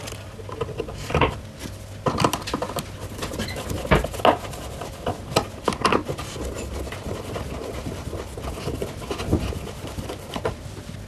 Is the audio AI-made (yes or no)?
no